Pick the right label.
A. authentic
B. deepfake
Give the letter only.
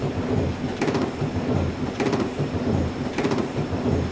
B